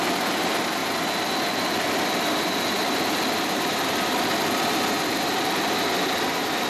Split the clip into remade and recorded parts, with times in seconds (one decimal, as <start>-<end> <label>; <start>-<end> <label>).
0.0-6.7 recorded